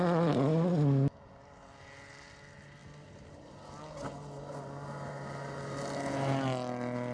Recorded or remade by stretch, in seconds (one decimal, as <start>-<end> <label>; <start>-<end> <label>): 0.0-7.1 recorded